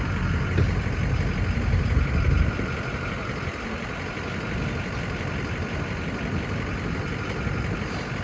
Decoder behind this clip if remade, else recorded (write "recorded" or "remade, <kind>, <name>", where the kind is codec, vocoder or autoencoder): recorded